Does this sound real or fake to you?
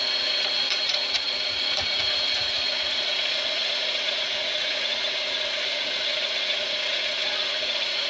fake